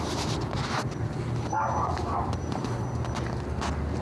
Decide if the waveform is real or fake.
real